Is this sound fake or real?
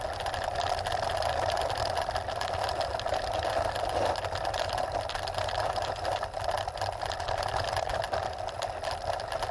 real